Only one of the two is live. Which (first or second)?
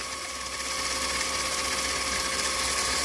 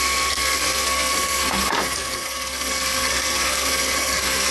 first